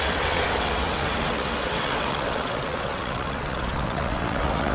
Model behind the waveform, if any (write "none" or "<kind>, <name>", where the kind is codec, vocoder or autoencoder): vocoder, WaveNeXt